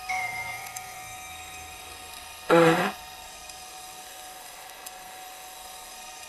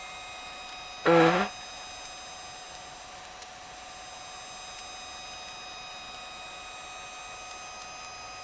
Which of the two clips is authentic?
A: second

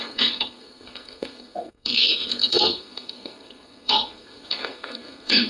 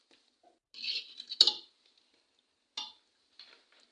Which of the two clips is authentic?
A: second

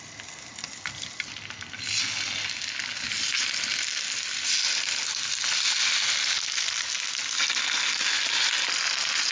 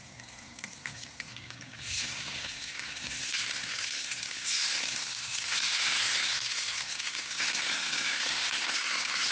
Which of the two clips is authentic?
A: first